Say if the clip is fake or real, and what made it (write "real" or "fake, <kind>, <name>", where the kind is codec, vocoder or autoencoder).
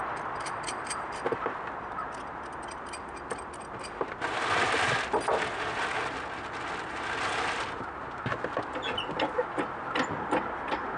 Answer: real